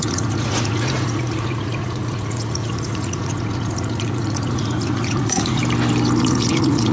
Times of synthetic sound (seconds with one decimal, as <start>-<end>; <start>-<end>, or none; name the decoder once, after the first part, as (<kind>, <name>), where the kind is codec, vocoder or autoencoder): 0.0-5.6 (vocoder, Vocos); 6.2-6.9